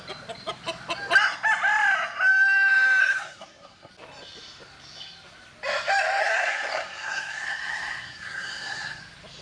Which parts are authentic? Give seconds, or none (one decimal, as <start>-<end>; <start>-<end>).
0.0-3.0; 3.9-6.2; 9.0-9.4